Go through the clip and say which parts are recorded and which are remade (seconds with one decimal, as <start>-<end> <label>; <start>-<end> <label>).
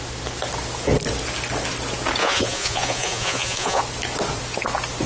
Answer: 0.0-2.2 recorded; 2.2-3.8 remade; 3.8-5.1 recorded